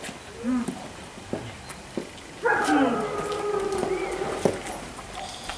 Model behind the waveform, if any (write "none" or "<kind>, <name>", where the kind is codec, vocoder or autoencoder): none